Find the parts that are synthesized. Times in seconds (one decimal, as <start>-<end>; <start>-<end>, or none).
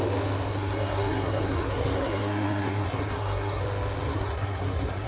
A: 0.5-3.6; 4.1-5.1